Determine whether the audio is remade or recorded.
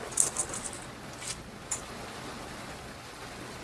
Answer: recorded